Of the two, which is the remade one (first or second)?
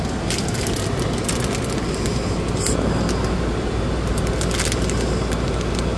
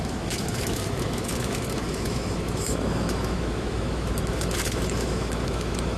second